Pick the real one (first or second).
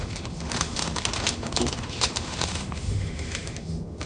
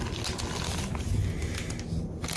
second